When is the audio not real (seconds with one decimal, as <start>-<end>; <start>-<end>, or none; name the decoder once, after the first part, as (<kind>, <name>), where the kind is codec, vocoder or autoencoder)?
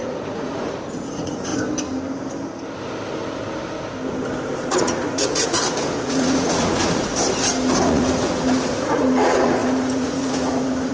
0.0-1.5 (vocoder, Vocos); 4.5-7.1; 7.8-10.9